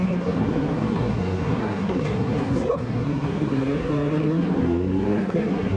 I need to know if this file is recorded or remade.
remade